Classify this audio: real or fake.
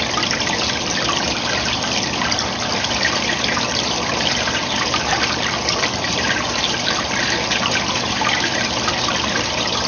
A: fake